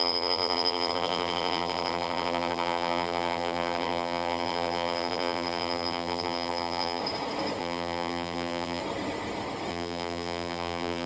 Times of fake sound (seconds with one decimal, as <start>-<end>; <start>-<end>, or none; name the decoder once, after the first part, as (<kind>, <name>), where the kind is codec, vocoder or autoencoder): 0.0-7.0 (vocoder, BigVGAN v2); 7.6-8.8; 9.7-11.1